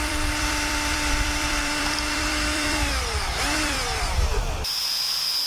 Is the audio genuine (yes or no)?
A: no